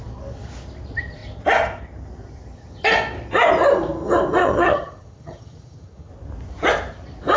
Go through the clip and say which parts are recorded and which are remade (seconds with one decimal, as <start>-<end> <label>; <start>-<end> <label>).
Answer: 0.0-4.4 recorded; 4.4-6.1 remade; 6.1-7.4 recorded